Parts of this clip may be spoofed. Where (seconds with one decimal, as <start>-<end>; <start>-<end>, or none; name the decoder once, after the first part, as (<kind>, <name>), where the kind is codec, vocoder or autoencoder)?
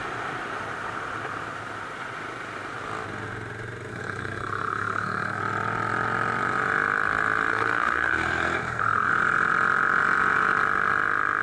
3.9-5.4 (codec, SNAC); 7.5-9.1